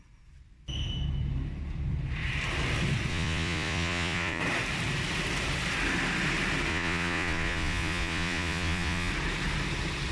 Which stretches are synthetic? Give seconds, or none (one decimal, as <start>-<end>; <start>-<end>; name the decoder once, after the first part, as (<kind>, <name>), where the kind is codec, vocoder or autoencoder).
3.1-4.4 (vocoder, Vocos); 6.7-9.1